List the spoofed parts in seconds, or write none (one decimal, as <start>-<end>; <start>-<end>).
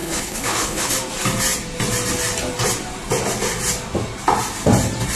0.0-0.9